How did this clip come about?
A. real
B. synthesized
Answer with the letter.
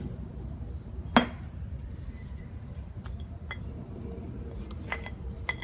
A